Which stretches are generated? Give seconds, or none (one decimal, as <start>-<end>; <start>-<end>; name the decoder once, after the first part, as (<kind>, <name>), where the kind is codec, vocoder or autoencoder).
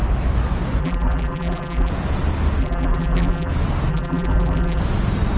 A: 0.8-1.9 (vocoder, BigVGAN v2); 2.6-3.5; 3.9-4.8